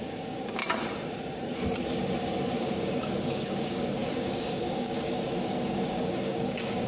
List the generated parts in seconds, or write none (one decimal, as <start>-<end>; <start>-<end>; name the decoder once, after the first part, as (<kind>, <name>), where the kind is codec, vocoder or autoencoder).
0.0-0.6 (codec, DAC); 2.6-6.9